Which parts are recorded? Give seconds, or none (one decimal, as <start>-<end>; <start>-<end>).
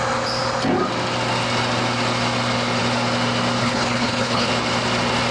0.0-3.6; 4.5-5.3